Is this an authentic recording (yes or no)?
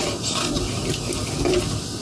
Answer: yes